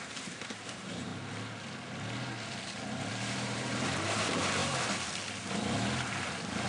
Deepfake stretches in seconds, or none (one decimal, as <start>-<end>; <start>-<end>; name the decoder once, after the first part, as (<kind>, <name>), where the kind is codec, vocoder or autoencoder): 0.0-1.1 (vocoder, BigVGAN v2); 3.1-4.6